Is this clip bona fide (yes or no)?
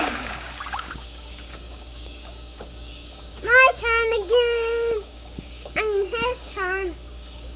no